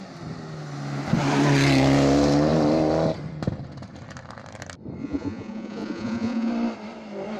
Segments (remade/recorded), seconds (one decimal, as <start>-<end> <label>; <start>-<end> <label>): 0.0-5.0 recorded; 5.0-6.5 remade; 6.5-7.4 recorded